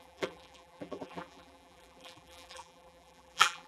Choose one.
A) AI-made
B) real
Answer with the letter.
A